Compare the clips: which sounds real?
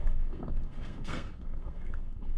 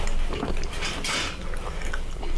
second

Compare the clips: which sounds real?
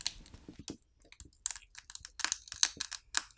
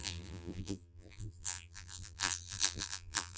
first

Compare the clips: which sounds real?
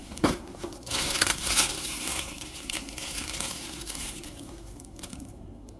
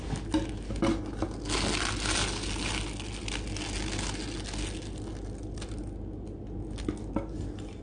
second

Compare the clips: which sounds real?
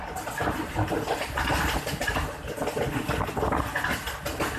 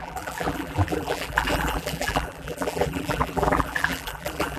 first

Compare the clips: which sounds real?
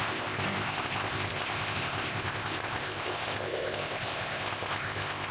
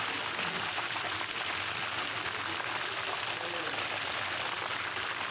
second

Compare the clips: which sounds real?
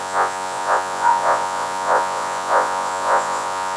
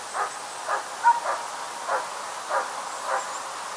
second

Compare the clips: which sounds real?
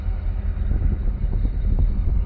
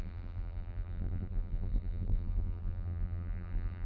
first